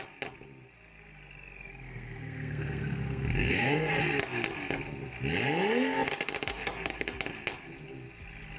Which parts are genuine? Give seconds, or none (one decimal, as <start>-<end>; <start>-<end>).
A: 0.0-1.7; 3.9-8.6